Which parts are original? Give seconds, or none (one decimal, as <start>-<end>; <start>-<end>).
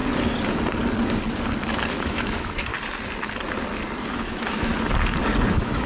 0.0-1.9; 2.7-4.2; 4.7-5.5